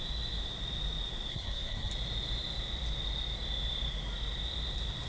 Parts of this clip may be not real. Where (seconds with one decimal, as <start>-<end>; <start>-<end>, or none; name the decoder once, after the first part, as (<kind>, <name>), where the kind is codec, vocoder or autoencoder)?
1.3-1.9 (codec, SNAC)